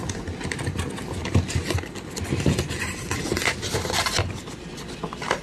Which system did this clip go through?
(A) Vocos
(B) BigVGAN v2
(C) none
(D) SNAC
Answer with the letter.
C